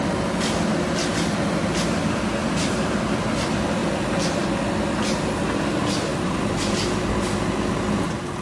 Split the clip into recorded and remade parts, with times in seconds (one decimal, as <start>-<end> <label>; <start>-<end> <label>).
0.0-2.4 recorded; 2.4-3.0 remade; 3.0-6.1 recorded; 6.1-7.1 remade; 7.1-8.4 recorded